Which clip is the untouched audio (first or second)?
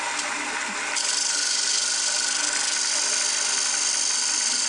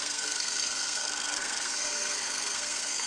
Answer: first